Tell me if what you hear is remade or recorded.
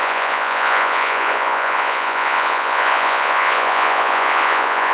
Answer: remade